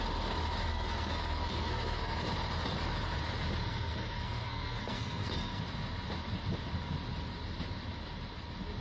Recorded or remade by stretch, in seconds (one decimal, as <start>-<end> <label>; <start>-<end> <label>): 0.0-0.7 recorded; 0.7-2.2 remade; 2.2-3.6 recorded; 3.6-5.6 remade; 5.6-8.8 recorded